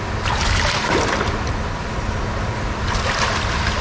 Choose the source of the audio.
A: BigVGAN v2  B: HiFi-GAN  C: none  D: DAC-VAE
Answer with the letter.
C